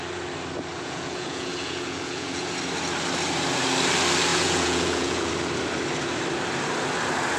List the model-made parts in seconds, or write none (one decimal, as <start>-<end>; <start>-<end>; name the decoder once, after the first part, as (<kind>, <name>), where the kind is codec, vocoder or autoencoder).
0.7-2.5 (vocoder, Vocos); 4.3-5.3